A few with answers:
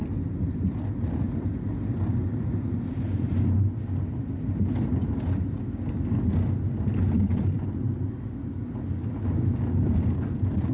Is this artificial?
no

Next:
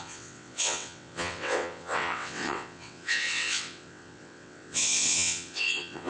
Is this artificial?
yes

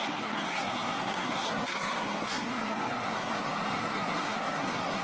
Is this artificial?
yes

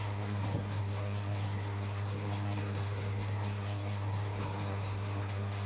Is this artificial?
yes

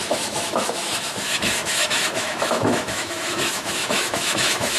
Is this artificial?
yes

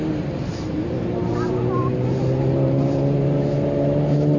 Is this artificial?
yes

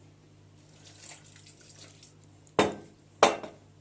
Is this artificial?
no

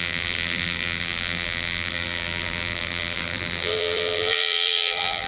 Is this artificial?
yes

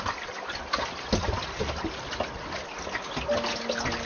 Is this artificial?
no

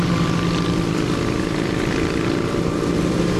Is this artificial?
no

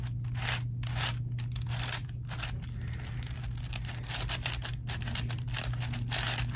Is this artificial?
no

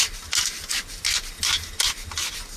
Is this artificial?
no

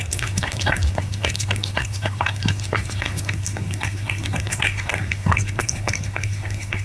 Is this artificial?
yes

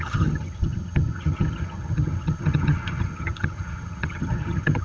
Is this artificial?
yes